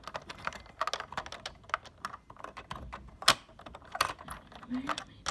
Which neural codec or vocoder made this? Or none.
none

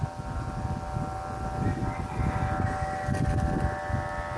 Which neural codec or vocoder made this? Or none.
none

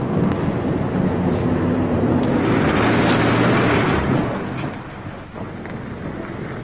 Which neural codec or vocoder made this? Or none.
none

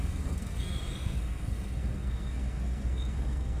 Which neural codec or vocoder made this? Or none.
codec, SNAC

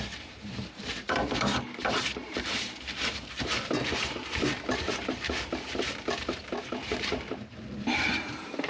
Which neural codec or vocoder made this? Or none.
vocoder, BigVGAN v2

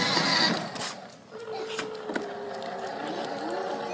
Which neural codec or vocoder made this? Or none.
none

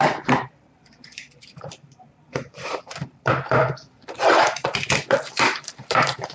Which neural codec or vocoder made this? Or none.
vocoder, BigVGAN v2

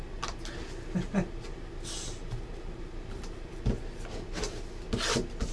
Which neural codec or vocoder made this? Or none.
none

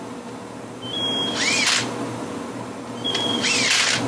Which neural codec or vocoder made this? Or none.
none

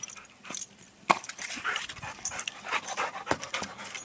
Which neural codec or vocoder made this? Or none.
vocoder, BigVGAN v2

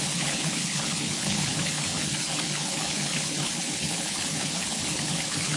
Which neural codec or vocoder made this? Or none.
codec, HILCodec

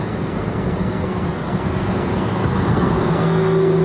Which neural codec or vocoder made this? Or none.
codec, SNAC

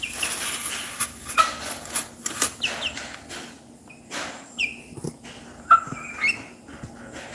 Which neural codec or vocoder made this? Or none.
none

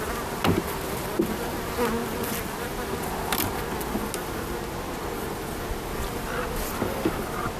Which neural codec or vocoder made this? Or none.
none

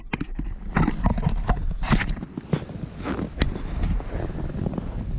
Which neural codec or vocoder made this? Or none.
none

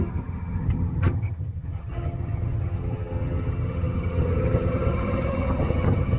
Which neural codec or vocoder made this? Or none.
vocoder, HiFi-GAN